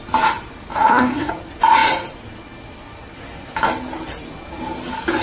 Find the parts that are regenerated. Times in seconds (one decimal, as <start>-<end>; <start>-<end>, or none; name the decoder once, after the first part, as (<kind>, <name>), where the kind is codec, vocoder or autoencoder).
0.7-1.3 (codec, SNAC)